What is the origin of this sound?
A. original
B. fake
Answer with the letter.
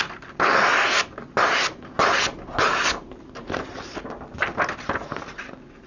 A